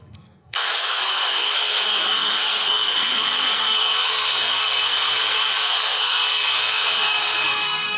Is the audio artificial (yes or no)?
yes